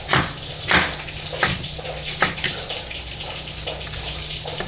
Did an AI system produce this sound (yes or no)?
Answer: no